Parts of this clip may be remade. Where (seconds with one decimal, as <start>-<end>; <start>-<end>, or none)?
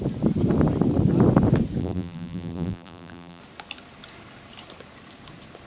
1.8-3.4